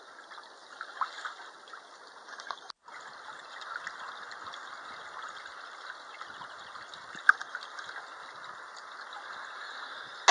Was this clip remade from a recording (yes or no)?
no